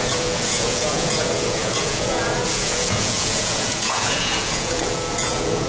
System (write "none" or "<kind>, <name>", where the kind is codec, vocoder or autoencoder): vocoder, Vocos